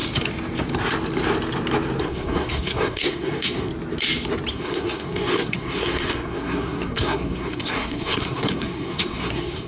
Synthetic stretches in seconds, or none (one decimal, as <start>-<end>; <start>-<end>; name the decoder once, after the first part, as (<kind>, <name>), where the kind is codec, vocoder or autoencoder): 2.0-3.7 (codec, SNAC); 4.5-9.7